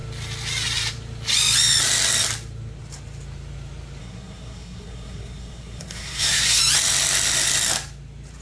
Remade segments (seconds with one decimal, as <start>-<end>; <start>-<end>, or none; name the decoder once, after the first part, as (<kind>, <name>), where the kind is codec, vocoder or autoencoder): 4.0-6.6 (codec, SNAC)